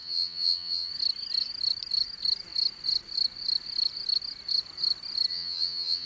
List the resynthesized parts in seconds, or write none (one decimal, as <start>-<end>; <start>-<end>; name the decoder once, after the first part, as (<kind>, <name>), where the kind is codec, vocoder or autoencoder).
0.0-0.9 (vocoder, HiFi-GAN); 5.3-6.1